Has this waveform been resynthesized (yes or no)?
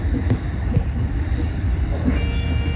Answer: no